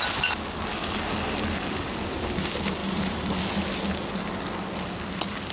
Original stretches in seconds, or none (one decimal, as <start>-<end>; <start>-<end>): 0.0-2.8; 3.4-5.5